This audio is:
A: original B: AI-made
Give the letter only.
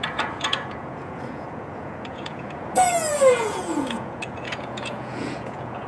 B